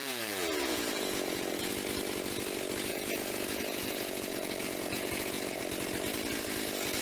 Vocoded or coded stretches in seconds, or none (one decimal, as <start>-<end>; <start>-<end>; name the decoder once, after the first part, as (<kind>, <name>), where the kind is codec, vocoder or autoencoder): 0.0-1.7 (vocoder, Vocos); 2.9-5.6